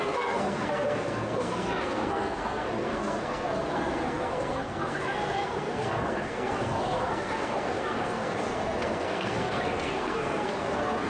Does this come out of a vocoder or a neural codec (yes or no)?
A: yes